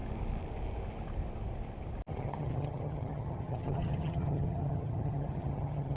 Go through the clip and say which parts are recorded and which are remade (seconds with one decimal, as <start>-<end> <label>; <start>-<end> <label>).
0.0-2.1 recorded; 2.1-6.0 remade